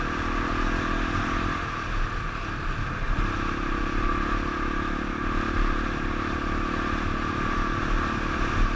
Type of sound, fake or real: real